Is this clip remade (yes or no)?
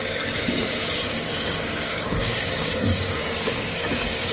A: yes